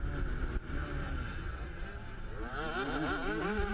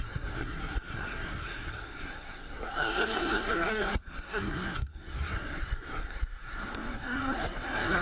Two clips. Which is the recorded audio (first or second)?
first